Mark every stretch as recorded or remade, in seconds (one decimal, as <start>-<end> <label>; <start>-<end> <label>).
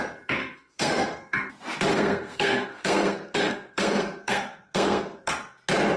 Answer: 0.0-0.4 recorded; 0.4-1.5 remade; 1.5-1.9 recorded; 1.9-5.3 remade; 5.3-6.0 recorded